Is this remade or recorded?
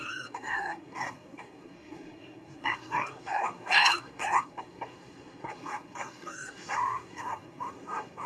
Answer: remade